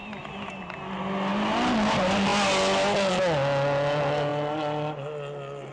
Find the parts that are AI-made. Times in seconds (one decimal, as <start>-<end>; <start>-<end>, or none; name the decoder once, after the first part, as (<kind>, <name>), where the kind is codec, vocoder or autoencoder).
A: none